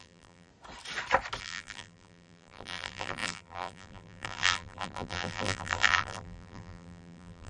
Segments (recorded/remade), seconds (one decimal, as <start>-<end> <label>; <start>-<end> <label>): 0.0-0.5 remade; 0.5-1.4 recorded; 1.4-7.5 remade